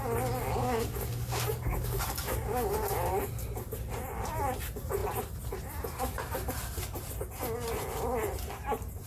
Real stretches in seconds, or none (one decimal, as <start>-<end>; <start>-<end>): 0.0-0.4; 2.7-9.1